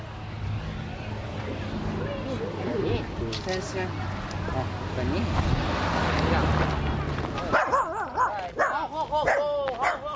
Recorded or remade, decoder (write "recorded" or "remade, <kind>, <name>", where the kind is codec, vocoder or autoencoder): recorded